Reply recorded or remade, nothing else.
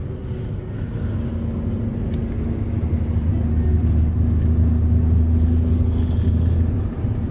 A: recorded